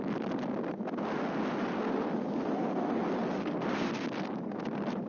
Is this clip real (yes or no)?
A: yes